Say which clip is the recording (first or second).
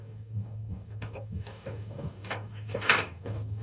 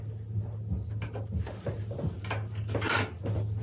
second